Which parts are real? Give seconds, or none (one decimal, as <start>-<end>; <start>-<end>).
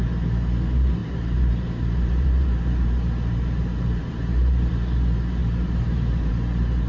0.0-1.0; 4.7-5.4; 6.3-6.9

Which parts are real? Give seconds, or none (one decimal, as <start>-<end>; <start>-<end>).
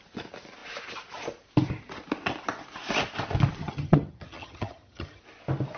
0.0-3.6; 5.2-5.8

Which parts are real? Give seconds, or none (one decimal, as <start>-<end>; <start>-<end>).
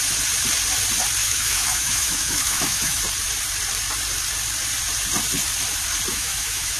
0.0-1.2; 3.0-6.1